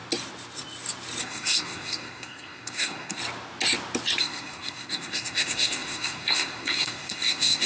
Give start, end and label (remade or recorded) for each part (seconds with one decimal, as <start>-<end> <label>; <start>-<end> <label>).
0.0-1.2 recorded; 1.2-3.2 remade; 3.2-4.2 recorded; 4.2-7.7 remade